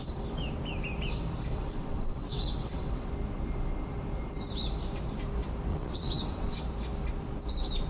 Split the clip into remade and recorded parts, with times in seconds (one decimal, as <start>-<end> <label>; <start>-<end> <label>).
0.0-1.5 recorded; 1.5-3.1 remade; 3.1-5.7 recorded; 5.7-6.6 remade; 6.6-7.9 recorded